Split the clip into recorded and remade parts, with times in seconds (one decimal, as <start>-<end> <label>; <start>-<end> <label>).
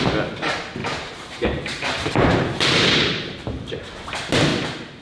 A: 0.0-0.8 recorded; 0.8-3.8 remade; 3.8-4.5 recorded; 4.5-5.0 remade